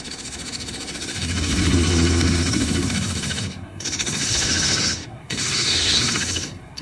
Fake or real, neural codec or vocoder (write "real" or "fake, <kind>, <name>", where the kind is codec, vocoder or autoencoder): fake, codec, SNAC